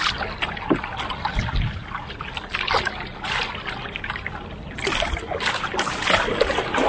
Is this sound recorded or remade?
recorded